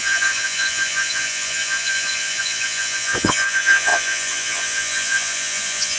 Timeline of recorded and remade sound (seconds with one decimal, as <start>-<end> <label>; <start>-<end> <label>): 0.0-6.0 remade